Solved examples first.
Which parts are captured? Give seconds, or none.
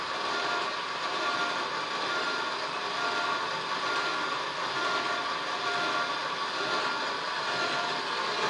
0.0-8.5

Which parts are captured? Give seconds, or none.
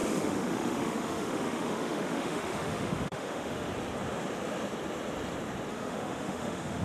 3.7-5.7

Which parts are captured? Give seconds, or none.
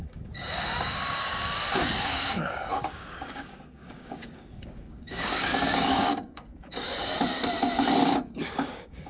6.9-7.9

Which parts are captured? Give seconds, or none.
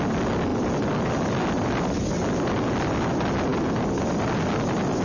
0.0-5.0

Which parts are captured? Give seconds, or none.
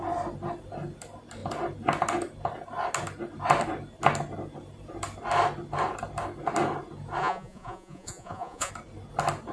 0.0-7.2; 8.7-9.5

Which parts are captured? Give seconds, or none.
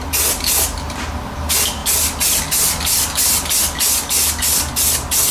0.0-5.3